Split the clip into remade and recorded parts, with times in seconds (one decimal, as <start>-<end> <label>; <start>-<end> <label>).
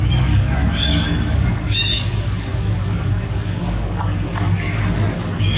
0.0-5.6 remade